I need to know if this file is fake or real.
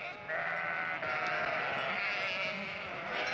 real